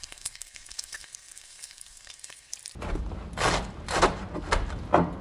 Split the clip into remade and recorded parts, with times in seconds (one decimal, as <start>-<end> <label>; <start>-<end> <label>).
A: 0.0-2.5 remade; 2.5-5.2 recorded